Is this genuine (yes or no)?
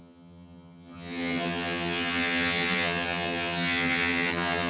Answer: no